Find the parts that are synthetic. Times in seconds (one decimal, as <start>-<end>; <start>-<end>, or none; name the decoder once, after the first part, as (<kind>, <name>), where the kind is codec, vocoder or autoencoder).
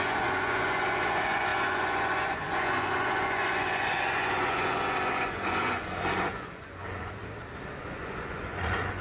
0.0-7.2 (vocoder, Vocos); 7.8-9.0